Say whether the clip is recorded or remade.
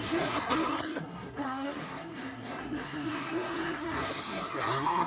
remade